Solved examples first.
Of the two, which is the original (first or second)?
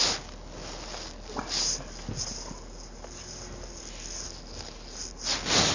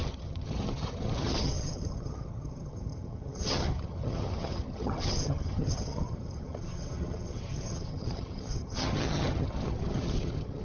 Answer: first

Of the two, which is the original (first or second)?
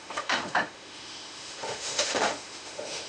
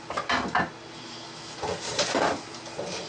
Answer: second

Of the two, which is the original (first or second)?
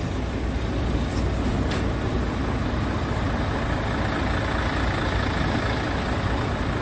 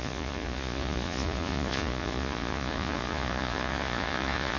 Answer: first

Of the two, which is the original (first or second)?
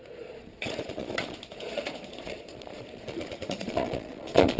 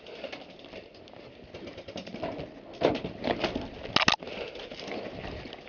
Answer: second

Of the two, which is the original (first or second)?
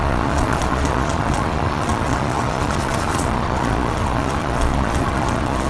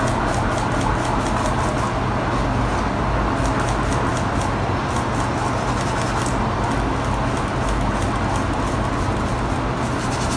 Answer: second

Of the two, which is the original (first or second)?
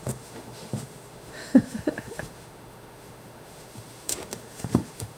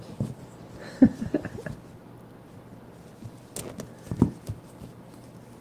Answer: second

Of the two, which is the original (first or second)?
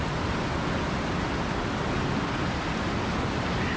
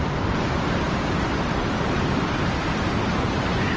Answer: first